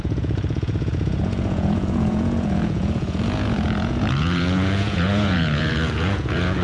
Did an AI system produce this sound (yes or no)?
yes